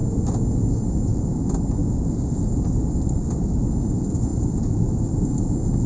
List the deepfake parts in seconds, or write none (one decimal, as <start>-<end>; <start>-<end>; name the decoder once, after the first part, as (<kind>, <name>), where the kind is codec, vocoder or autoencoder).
1.8-3.7 (vocoder, BigVGAN v2)